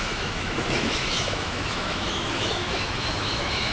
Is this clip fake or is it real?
fake